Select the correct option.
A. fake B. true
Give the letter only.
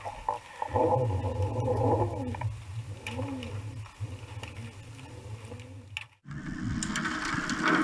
B